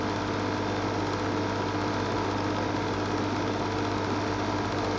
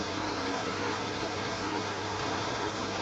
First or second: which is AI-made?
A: second